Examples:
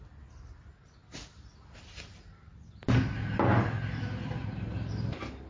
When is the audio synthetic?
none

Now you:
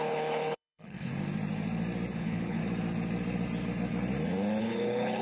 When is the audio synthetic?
0.0-1.1; 2.2-2.6; 4.6-5.2

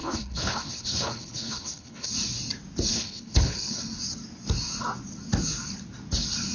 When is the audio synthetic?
0.0-2.1; 2.9-3.8

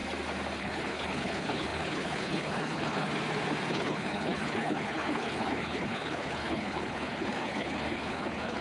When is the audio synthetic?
0.6-3.1; 3.7-8.6

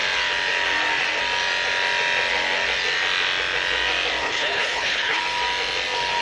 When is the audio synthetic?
4.2-5.2